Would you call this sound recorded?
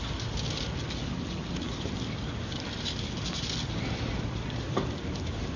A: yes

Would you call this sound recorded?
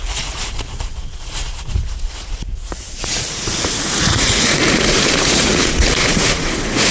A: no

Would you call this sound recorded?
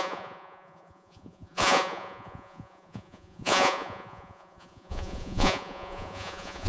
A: no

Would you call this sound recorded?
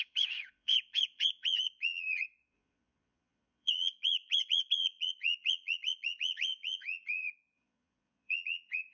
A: no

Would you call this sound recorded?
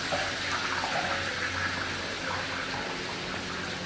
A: yes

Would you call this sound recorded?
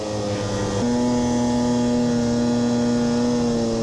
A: yes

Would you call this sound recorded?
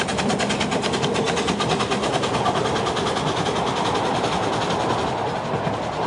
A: yes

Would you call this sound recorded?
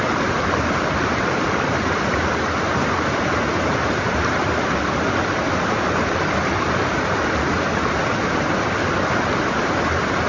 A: yes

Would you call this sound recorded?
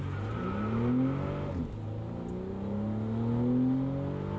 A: yes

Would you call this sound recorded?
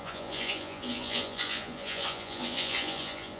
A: no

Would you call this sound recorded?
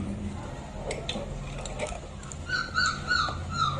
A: yes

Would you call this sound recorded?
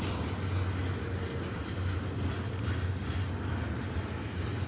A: yes